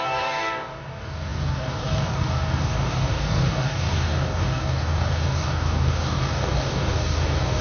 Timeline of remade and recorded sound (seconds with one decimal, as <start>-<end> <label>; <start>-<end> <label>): 0.0-7.6 remade